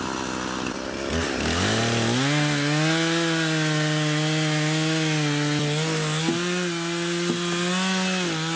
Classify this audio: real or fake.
real